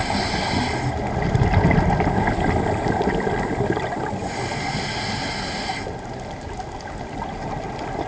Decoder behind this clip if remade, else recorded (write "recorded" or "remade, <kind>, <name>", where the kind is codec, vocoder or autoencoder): recorded